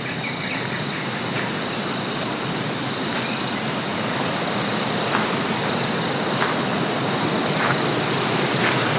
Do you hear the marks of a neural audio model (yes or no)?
no